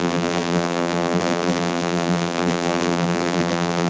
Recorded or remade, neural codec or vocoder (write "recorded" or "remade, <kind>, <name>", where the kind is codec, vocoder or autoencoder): remade, vocoder, BigVGAN v2